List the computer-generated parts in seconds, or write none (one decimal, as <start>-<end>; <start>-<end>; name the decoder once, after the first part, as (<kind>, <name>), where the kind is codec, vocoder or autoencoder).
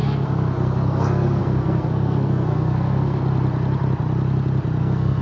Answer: 0.0-3.2 (codec, SNAC); 4.8-5.2